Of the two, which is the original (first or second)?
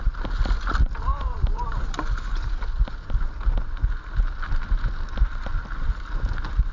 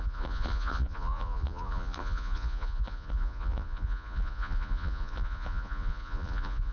first